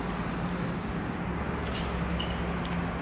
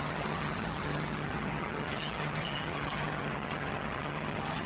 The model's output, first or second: second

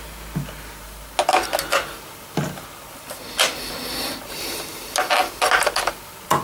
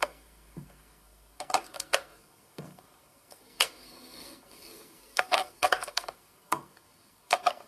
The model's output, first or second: second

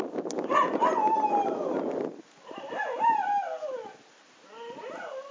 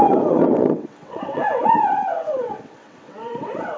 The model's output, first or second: second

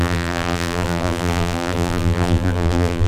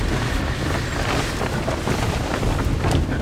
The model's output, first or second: first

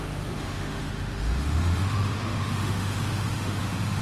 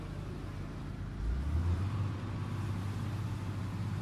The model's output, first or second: first